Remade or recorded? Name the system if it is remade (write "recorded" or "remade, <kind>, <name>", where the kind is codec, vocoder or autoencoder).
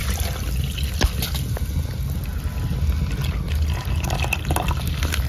recorded